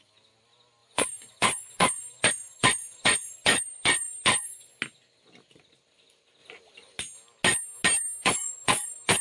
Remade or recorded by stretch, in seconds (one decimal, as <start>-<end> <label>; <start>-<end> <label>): 0.0-0.8 recorded; 0.8-4.7 remade; 4.7-8.2 recorded; 8.2-9.2 remade